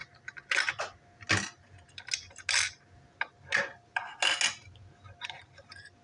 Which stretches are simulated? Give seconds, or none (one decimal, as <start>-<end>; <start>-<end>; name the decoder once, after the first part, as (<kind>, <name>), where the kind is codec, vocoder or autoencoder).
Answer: none